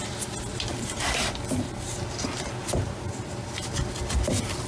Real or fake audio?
fake